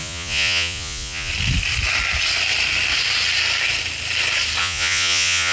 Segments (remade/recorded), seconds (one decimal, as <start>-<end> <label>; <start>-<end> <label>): 0.0-1.3 remade; 1.3-4.6 recorded; 4.6-5.5 remade

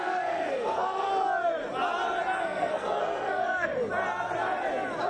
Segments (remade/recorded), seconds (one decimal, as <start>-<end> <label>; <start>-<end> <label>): 0.0-1.1 remade; 1.1-2.4 recorded; 2.4-3.7 remade; 3.7-5.1 recorded

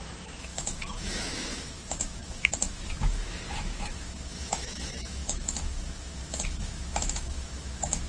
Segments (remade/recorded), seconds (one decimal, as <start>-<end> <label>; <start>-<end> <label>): 0.0-8.1 remade

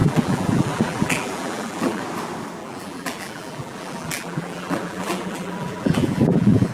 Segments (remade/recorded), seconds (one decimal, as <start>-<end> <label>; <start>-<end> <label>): 0.0-2.0 remade; 2.0-2.6 recorded; 2.6-6.7 remade